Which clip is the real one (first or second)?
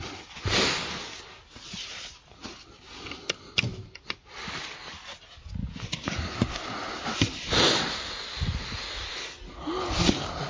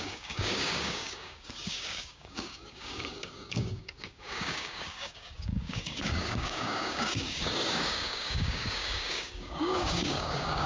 first